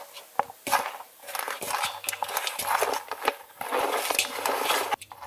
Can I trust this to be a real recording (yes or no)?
yes